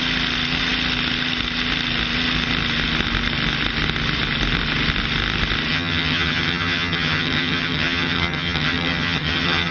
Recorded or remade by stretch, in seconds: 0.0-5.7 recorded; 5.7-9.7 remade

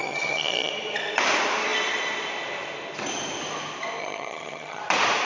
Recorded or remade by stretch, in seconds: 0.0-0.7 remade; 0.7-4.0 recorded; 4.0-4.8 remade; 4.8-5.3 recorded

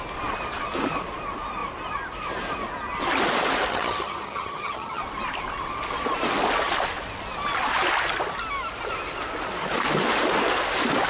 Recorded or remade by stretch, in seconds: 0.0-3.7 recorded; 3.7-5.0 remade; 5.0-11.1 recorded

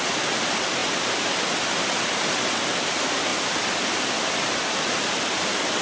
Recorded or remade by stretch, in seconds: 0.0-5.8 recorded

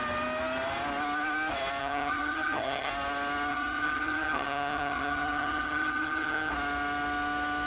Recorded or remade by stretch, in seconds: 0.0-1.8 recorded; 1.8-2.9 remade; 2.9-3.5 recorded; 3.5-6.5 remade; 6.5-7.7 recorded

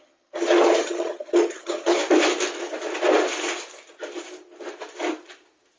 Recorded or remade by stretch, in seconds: 0.0-2.0 remade; 2.0-5.8 recorded

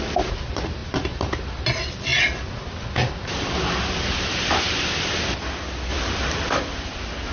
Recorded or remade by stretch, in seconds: 0.0-7.3 recorded